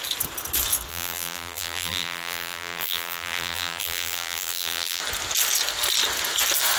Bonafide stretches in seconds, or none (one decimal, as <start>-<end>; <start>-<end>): 0.0-0.9; 5.0-6.8